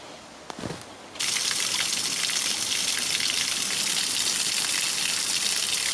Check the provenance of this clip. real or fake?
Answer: real